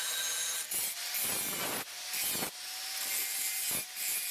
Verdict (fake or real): real